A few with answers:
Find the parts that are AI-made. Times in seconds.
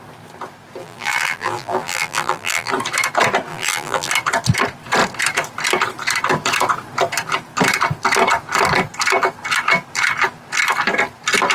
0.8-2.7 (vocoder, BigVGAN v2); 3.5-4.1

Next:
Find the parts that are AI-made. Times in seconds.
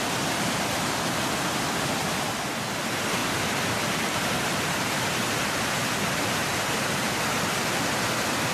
3.2-5.7 (vocoder, BigVGAN v2); 6.4-7.2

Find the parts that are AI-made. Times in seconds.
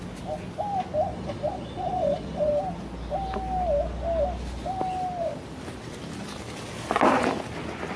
1.1-2.5 (vocoder, Vocos)